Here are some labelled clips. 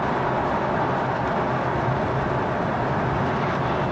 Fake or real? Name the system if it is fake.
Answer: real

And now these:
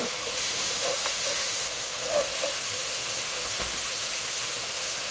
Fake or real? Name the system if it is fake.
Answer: fake, autoencoder, DAC-VAE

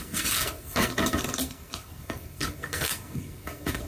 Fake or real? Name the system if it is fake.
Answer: fake, codec, SNAC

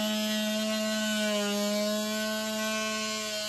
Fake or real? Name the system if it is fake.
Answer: real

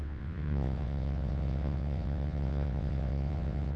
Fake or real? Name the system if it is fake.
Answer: fake, vocoder, WaveNeXt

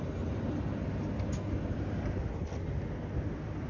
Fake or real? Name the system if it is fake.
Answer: real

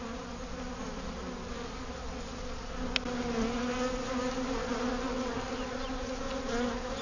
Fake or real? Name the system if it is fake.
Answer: real